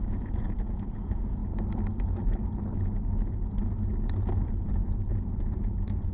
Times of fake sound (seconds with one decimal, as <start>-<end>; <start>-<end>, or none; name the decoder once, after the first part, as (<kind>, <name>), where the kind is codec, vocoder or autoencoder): 0.0-1.4 (vocoder, Vocos); 3.9-6.1